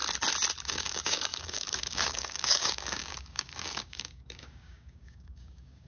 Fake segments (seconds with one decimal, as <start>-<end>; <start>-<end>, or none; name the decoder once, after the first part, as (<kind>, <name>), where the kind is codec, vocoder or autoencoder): 0.6-5.9 (codec, DAC)